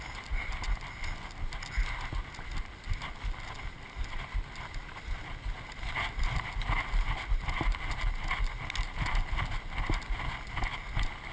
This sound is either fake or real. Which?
real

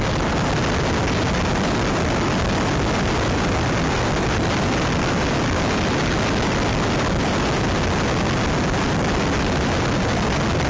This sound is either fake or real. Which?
real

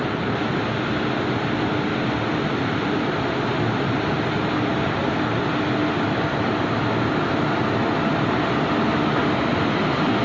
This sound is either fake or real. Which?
real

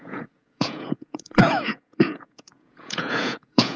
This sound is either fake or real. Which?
fake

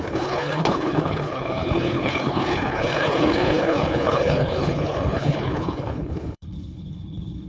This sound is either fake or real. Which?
fake